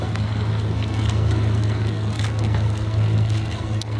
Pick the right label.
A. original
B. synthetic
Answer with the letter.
B